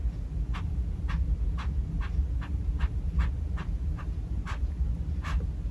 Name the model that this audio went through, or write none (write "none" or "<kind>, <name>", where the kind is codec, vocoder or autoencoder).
none